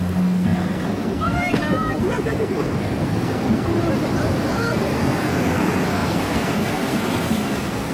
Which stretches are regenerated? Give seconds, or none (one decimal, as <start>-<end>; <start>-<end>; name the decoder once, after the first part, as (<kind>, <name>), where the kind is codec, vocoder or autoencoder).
0.0-3.7 (codec, SNAC); 4.5-7.9